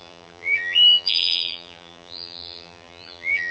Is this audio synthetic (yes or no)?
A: yes